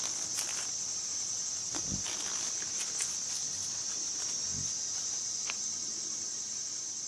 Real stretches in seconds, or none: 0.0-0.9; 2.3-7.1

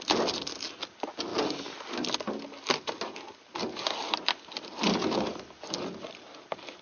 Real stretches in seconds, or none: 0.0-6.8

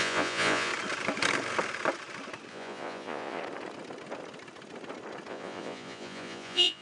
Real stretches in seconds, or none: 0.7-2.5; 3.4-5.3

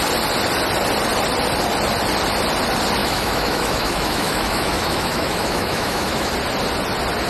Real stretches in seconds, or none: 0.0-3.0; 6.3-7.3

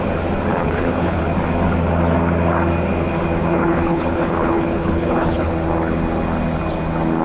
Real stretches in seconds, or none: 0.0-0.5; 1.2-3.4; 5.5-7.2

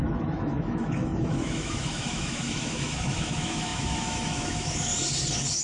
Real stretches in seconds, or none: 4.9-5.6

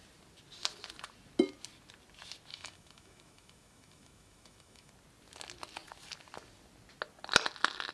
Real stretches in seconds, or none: 0.0-2.5; 4.9-7.9